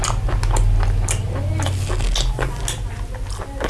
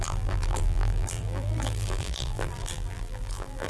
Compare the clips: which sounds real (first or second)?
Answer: first